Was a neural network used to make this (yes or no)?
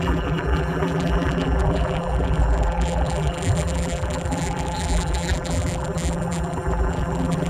yes